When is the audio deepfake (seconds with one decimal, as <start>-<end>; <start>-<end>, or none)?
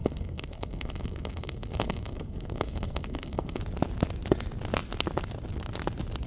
0.0-3.6